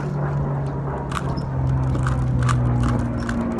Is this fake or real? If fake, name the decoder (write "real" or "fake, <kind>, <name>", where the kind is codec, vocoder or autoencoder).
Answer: real